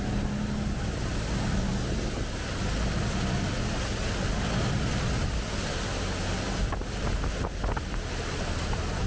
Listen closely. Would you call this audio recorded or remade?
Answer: recorded